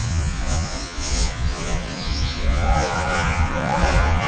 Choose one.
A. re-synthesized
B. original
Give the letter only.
A